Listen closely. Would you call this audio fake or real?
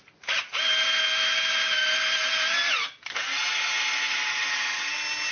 real